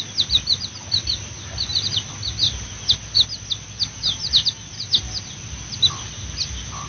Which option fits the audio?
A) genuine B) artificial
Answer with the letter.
A